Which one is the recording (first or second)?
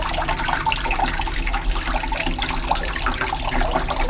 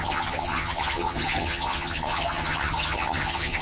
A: first